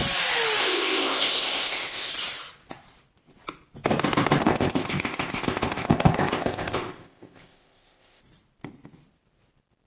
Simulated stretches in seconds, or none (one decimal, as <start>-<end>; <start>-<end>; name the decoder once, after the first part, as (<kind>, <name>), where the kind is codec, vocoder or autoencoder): 0.6-2.1 (codec, ZipCodec); 4.4-8.2